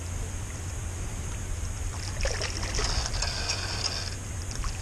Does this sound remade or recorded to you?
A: recorded